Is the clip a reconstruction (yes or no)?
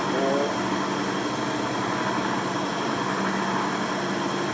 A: no